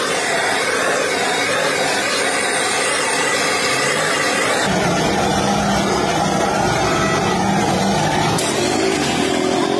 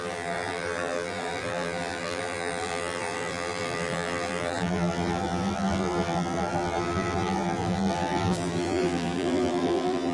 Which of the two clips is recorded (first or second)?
first